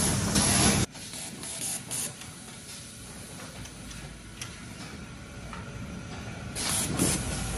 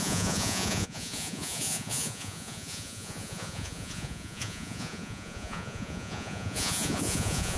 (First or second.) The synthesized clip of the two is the second